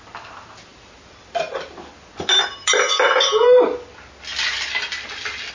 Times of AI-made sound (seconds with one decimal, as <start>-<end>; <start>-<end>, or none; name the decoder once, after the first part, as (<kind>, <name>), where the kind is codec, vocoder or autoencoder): none